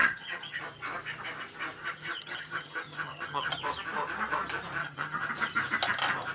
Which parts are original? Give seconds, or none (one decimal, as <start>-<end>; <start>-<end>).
0.6-1.8; 3.5-4.8; 5.3-6.3